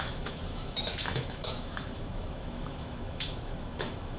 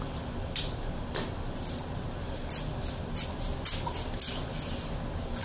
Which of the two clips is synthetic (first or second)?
first